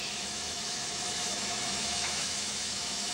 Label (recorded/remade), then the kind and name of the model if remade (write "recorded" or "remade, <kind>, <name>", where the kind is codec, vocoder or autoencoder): remade, autoencoder, DAC-VAE